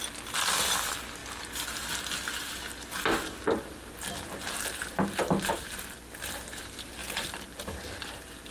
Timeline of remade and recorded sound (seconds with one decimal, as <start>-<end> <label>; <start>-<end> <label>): 0.0-8.5 recorded